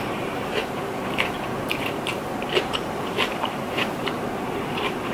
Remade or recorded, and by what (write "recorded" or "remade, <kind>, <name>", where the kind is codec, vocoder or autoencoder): remade, vocoder, BigVGAN v2